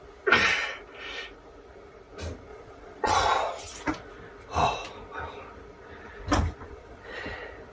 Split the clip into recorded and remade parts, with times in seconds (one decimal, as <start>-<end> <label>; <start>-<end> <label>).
0.0-2.5 recorded; 2.5-3.1 remade; 3.1-6.6 recorded; 6.6-7.2 remade; 7.2-7.7 recorded